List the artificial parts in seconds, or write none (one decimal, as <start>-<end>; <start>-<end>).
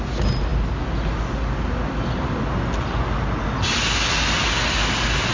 none